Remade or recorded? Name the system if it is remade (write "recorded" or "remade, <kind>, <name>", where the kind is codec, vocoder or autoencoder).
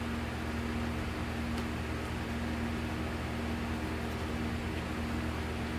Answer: recorded